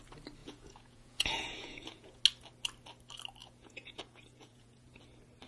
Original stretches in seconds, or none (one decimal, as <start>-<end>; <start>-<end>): 0.0-0.4; 2.2-3.4; 5.0-5.5